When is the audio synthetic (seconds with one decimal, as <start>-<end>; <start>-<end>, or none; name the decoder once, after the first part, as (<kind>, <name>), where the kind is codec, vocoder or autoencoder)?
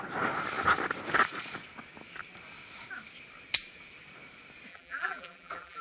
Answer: 4.7-5.8 (vocoder, BigVGAN v2)